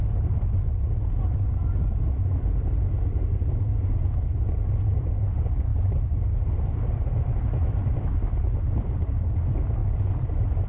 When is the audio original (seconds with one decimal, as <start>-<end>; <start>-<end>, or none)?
0.0-5.7; 8.5-9.8